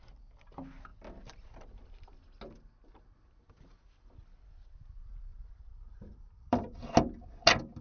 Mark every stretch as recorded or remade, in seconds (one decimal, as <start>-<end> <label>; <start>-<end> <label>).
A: 0.0-0.9 recorded; 0.9-1.8 remade; 1.8-5.3 recorded; 5.3-6.7 remade; 6.7-7.8 recorded